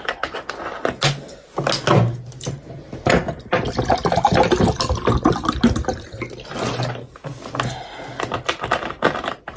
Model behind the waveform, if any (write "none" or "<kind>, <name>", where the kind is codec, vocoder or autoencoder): none